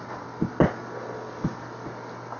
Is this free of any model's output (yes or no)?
yes